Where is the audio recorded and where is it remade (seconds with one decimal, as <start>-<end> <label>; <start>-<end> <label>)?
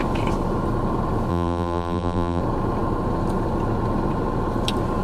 0.0-1.3 recorded; 1.3-2.4 remade; 2.4-5.0 recorded